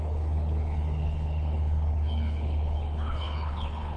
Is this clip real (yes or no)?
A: no